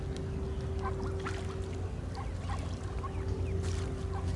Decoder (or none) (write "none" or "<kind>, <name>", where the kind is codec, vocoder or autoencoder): none